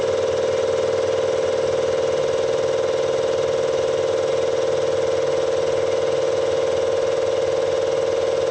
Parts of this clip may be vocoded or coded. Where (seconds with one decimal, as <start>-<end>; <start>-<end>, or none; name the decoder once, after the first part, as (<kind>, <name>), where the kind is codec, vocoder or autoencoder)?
none